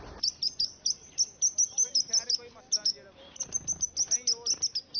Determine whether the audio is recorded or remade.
recorded